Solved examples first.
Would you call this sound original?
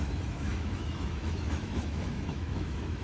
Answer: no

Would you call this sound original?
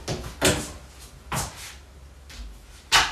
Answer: yes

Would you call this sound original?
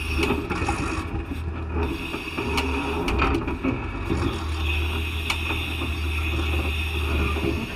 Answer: yes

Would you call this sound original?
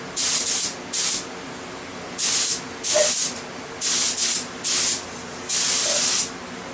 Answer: yes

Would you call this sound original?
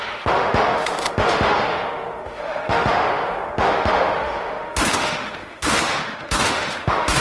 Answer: no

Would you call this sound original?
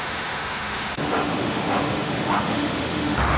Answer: no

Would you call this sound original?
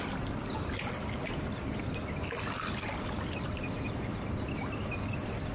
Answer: yes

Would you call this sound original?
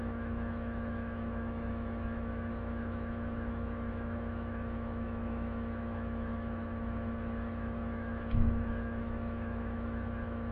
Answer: no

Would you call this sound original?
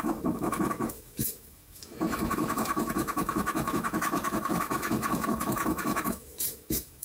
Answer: no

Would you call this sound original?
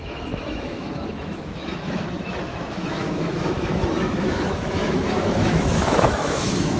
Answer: no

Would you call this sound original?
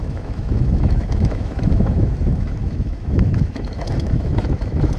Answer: no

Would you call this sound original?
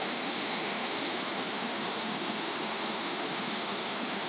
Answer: no